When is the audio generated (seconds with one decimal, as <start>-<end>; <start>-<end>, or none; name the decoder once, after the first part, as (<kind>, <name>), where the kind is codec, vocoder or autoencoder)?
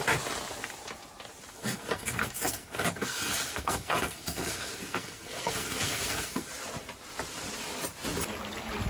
1.5-6.5 (codec, SNAC)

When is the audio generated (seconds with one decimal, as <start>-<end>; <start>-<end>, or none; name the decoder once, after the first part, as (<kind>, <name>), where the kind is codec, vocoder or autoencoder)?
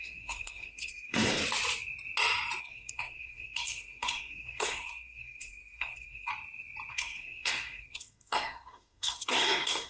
0.0-1.4 (codec, SNAC); 2.6-6.3; 6.9-9.9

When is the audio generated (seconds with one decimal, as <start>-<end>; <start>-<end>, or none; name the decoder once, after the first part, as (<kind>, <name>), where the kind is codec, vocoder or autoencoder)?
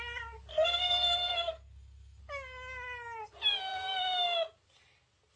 0.5-2.2 (codec, SNAC)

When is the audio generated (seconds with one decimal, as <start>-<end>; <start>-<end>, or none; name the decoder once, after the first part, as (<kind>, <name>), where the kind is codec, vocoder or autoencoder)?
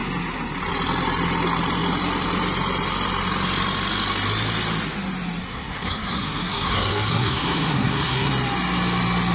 5.4-8.3 (codec, SNAC)